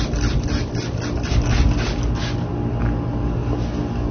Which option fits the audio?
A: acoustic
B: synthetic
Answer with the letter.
A